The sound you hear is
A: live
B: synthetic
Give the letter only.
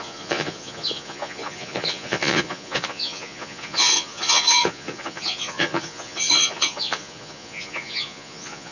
B